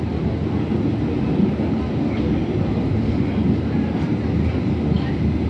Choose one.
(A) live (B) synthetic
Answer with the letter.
A